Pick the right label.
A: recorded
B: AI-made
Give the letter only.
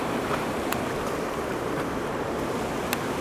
A